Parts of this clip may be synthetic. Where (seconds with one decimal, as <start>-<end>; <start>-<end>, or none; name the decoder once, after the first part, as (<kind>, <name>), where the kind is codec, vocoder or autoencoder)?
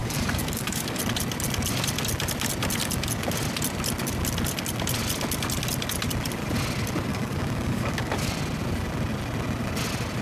0.0-1.0 (codec, DAC); 7.1-8.3